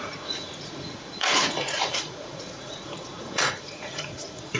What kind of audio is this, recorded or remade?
remade